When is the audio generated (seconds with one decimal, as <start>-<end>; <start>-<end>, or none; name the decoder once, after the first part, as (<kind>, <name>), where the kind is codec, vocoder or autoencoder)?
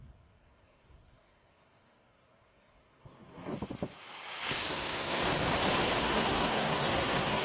0.0-3.5 (codec, SNAC); 4.7-5.2; 6.0-7.4